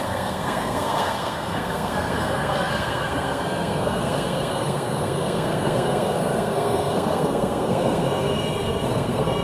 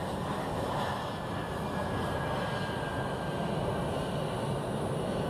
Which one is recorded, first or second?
second